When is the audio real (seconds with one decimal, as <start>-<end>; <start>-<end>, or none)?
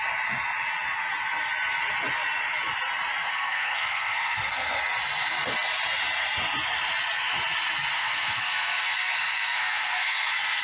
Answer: 0.0-3.3; 4.8-7.9